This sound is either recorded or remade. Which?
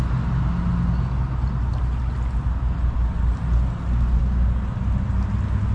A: recorded